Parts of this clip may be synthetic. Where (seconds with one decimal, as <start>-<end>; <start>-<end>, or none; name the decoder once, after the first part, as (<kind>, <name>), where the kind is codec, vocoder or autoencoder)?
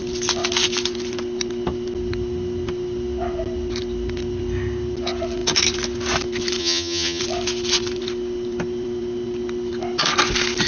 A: 6.6-7.2 (vocoder, HiFi-GAN)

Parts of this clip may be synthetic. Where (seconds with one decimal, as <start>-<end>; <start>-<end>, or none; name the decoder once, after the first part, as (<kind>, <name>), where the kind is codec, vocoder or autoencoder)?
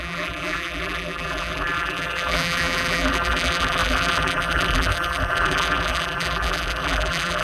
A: 0.0-7.4 (vocoder, BigVGAN v2)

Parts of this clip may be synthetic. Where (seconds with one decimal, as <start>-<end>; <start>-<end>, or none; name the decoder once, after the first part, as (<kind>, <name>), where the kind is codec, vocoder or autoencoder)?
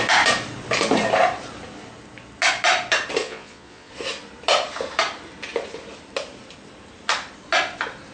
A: 3.2-3.9 (vocoder, Vocos)